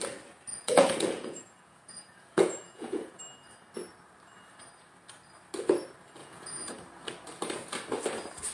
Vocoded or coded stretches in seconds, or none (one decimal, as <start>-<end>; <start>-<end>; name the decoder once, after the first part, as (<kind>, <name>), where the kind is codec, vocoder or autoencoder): 0.5-3.2 (vocoder, Vocos); 6.2-6.7